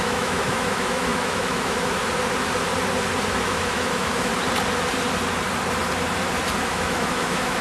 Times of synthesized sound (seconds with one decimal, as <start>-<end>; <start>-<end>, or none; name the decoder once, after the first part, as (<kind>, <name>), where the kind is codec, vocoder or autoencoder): 0.0-2.0 (autoencoder, DAC-VAE); 3.4-4.3; 6.7-7.6